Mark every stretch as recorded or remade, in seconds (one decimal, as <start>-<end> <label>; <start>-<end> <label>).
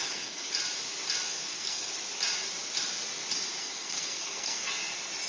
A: 0.0-0.5 remade; 0.5-1.3 recorded; 1.3-1.9 remade; 1.9-3.6 recorded; 3.6-4.7 remade; 4.7-5.3 recorded